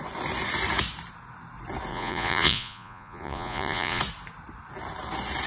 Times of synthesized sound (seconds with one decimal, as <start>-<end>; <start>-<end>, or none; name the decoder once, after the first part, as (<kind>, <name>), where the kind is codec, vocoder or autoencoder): 1.9-4.0 (vocoder, Vocos)